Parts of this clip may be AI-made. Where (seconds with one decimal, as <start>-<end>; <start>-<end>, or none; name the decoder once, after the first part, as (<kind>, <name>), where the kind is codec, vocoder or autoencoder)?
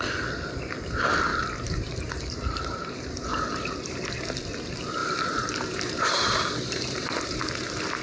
1.3-2.9 (vocoder, BigVGAN v2); 3.3-4.0; 5.0-7.4